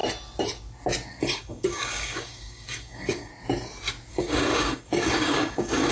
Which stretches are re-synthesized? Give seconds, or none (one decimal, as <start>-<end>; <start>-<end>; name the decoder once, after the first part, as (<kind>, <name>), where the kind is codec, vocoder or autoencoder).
1.2-3.3 (codec, DAC); 4.1-5.9